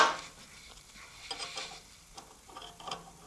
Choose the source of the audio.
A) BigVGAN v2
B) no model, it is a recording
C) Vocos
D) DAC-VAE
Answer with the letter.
B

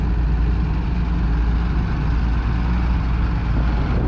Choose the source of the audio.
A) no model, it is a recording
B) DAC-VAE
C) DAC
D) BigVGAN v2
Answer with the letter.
A